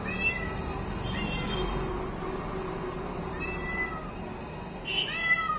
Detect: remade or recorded recorded